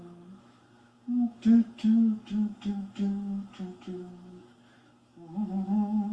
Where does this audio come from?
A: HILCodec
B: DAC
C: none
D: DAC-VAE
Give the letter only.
D